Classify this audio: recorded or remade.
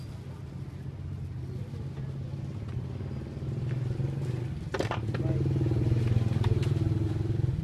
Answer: recorded